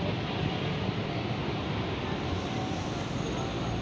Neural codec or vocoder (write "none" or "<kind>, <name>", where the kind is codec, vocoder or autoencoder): vocoder, BigVGAN v2